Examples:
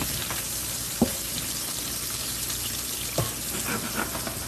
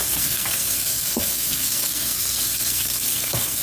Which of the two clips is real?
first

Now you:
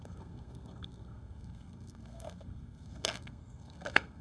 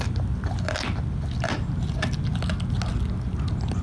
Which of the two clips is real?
second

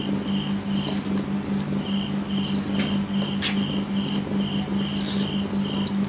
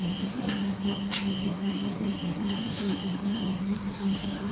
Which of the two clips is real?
first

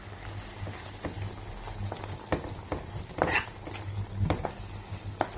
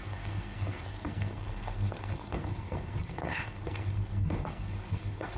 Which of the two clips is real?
first